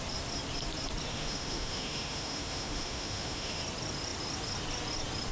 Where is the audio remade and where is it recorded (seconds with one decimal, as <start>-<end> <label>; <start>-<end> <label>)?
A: 0.0-1.1 recorded; 1.1-3.6 remade; 3.6-5.3 recorded